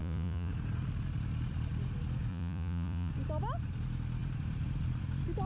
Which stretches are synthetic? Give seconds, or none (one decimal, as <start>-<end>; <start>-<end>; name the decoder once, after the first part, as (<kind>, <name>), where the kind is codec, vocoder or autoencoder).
0.0-0.5 (vocoder, Vocos); 2.3-3.1